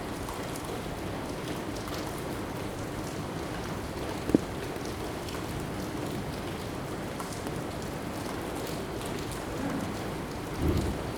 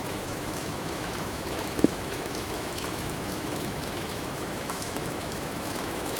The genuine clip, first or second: first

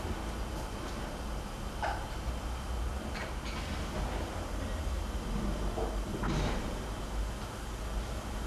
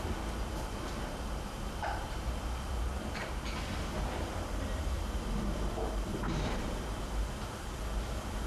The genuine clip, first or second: first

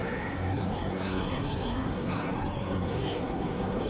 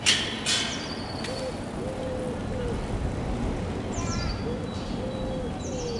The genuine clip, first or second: second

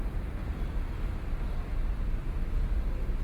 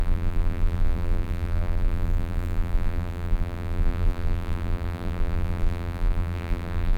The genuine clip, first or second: first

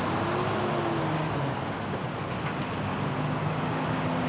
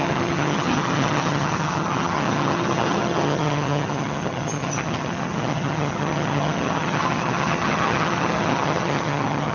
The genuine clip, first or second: first